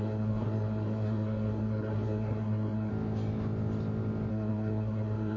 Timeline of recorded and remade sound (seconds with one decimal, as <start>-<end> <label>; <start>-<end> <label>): 0.0-2.9 remade; 2.9-4.3 recorded; 4.3-5.4 remade